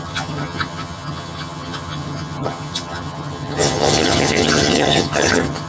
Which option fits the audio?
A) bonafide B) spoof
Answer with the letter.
B